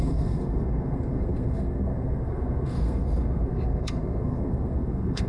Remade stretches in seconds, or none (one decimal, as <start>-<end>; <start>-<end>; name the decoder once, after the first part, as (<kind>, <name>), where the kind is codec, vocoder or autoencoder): 0.0-5.3 (codec, SNAC)